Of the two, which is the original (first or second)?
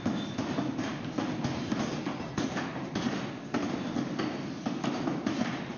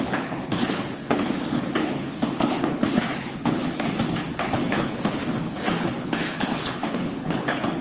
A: first